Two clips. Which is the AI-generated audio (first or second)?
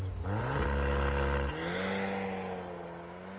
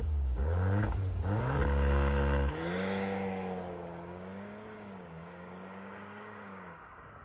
second